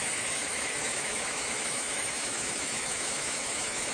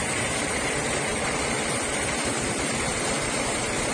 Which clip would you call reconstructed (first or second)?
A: first